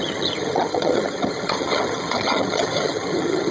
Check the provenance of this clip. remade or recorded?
remade